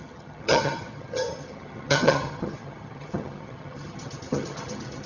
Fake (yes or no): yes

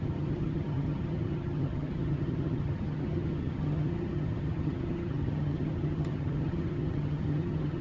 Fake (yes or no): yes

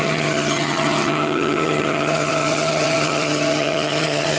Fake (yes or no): yes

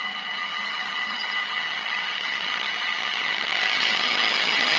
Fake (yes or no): yes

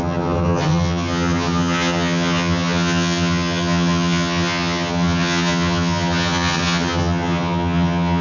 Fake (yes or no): yes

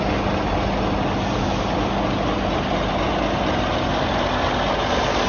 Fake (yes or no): no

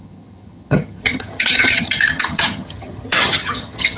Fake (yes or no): yes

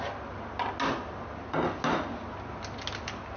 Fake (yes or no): no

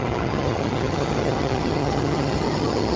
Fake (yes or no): yes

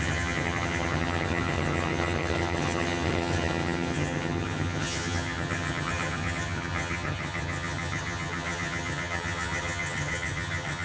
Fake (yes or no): yes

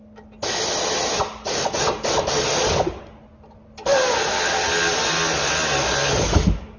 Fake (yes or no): no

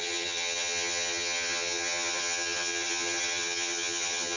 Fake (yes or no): yes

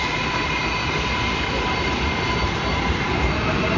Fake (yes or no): no